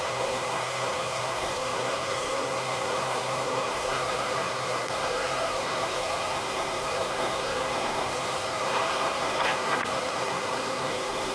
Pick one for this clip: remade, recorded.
remade